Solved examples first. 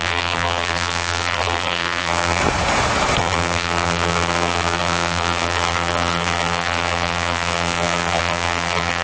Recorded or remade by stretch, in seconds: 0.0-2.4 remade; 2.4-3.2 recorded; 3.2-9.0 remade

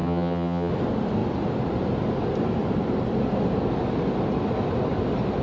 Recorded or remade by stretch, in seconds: 0.0-0.7 remade; 0.7-5.4 recorded

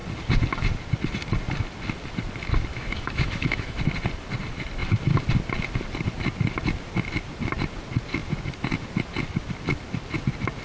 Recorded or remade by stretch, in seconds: 0.0-2.7 recorded; 2.7-3.8 remade; 3.8-10.6 recorded

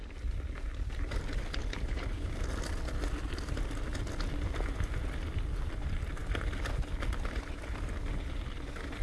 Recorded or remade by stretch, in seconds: 0.0-1.6 recorded; 1.6-2.3 remade; 2.3-9.0 recorded

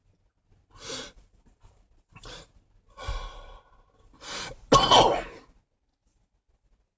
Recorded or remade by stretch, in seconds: 0.0-7.0 recorded